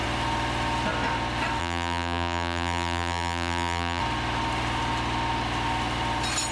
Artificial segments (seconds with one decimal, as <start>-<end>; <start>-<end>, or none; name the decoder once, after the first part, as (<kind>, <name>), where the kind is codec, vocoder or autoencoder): 1.6-4.0 (vocoder, BigVGAN v2)